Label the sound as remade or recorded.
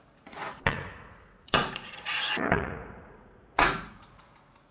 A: remade